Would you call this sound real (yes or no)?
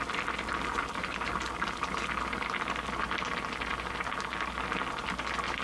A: yes